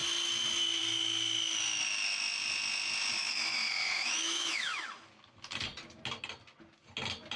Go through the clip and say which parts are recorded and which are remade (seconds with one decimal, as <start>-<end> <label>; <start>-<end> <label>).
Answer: 0.0-3.2 recorded; 3.2-4.9 remade; 4.9-7.4 recorded